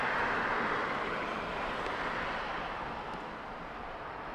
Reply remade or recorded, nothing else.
recorded